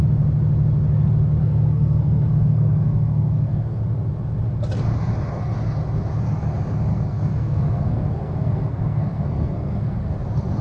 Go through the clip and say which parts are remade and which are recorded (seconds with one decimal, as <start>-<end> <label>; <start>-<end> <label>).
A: 0.0-1.4 recorded; 1.4-3.8 remade; 3.8-6.9 recorded; 6.9-10.1 remade; 10.1-10.6 recorded